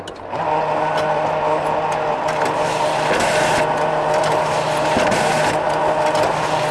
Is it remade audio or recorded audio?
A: recorded